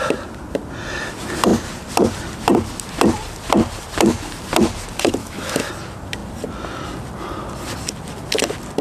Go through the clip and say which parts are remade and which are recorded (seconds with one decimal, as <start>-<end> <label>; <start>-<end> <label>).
0.0-5.2 recorded; 5.2-5.7 remade; 5.7-8.8 recorded